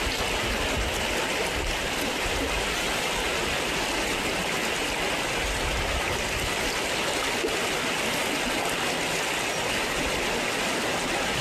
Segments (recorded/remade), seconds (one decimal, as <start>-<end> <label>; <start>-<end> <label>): 0.0-11.4 recorded